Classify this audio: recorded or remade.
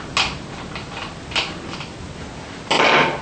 recorded